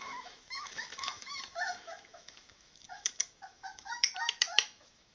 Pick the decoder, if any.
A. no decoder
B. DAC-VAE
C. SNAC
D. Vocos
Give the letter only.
B